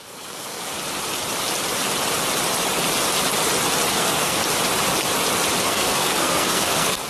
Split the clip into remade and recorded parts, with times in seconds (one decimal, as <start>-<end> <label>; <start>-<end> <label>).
0.0-0.7 remade; 0.7-3.9 recorded; 3.9-4.4 remade; 4.4-5.6 recorded; 5.6-7.1 remade